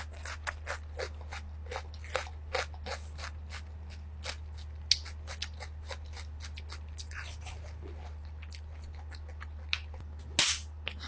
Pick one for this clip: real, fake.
real